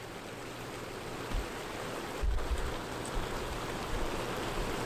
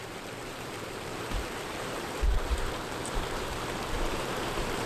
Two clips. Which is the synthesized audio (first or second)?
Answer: second